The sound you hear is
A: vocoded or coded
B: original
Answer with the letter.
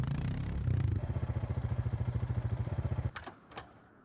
A